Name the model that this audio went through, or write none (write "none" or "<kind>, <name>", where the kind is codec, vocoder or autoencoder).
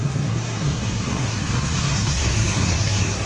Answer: codec, SNAC